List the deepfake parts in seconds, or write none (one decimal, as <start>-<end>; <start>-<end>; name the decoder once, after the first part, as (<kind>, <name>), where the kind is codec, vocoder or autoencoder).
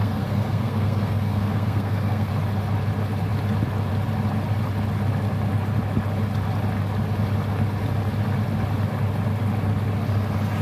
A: 0.0-2.3 (codec, SNAC)